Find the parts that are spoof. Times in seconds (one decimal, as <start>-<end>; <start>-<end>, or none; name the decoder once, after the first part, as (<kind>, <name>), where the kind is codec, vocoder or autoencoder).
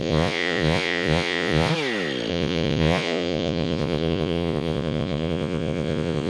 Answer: 0.0-1.7 (vocoder, Vocos); 2.3-6.3